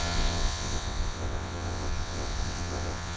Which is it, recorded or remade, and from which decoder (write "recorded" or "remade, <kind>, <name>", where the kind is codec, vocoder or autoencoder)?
remade, vocoder, WaveNeXt